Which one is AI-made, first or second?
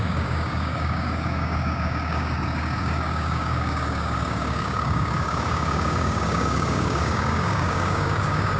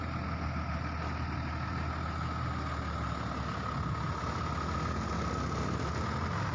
first